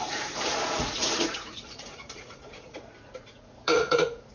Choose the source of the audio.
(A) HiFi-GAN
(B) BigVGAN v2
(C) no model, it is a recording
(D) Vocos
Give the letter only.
D